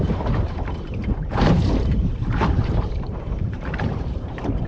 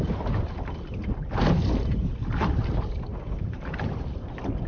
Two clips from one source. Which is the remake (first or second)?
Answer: first